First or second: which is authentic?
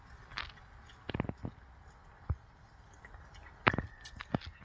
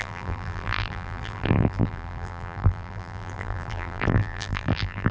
first